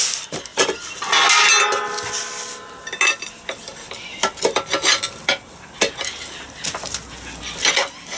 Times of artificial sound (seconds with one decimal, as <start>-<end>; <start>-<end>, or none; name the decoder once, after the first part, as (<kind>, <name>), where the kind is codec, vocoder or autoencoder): none